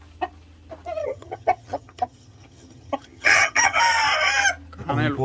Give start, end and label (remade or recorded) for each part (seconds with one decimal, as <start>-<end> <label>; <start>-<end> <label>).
0.0-1.0 recorded; 1.0-3.8 remade; 3.8-5.2 recorded